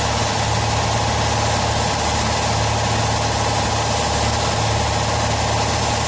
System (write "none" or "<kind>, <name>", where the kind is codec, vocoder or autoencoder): none